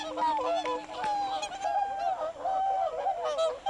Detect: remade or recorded recorded